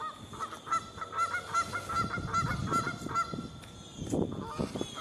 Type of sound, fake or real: real